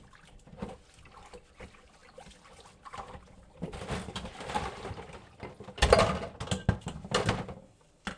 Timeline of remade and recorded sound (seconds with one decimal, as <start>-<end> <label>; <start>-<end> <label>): 0.0-8.2 recorded